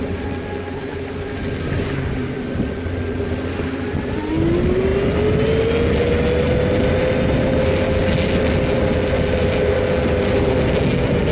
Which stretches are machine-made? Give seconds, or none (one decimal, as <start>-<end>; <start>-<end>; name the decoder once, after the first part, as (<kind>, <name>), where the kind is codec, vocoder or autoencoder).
none